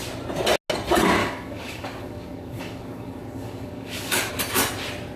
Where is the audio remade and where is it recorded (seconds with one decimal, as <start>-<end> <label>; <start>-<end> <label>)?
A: 0.0-1.2 recorded; 1.2-4.3 remade; 4.3-5.2 recorded